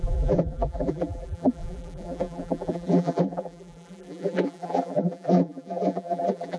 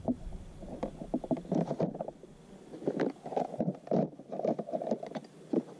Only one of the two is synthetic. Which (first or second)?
first